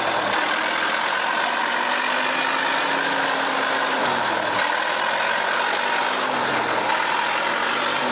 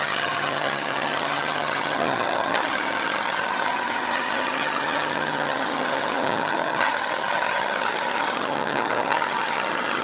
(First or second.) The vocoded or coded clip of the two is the second